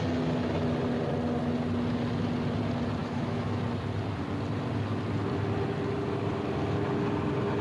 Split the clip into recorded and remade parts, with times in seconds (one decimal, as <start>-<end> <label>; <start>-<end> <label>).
0.0-3.0 recorded; 3.0-3.6 remade; 3.6-7.6 recorded